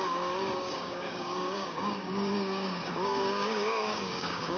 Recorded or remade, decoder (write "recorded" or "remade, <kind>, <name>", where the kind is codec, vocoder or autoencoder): remade, codec, DAC